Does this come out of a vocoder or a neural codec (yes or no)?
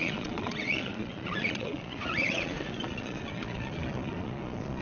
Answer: yes